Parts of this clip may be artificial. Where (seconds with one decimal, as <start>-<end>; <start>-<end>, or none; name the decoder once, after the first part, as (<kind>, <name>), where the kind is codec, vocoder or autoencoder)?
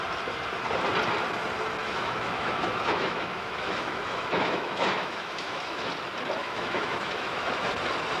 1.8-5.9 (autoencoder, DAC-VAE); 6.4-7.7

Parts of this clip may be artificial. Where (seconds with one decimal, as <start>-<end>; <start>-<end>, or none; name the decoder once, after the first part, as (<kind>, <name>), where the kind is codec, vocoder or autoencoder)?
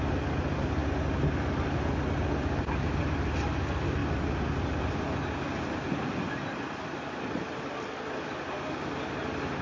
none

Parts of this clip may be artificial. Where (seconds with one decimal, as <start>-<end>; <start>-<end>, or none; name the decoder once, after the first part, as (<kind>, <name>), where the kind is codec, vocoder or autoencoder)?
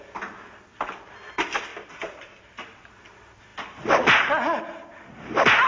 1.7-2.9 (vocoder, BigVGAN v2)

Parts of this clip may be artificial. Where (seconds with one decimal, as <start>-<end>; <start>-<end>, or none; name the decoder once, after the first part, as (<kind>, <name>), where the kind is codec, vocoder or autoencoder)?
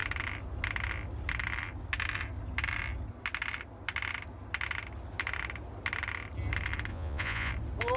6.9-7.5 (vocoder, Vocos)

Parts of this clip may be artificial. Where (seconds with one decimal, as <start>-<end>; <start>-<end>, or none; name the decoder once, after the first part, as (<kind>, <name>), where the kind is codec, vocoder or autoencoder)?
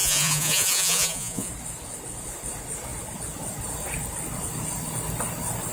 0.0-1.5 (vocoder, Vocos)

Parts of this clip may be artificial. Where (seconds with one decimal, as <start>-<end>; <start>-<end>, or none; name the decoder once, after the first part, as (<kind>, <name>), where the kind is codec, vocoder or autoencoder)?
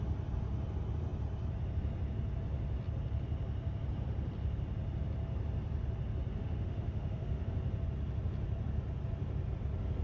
6.4-7.4 (autoencoder, DAC-VAE)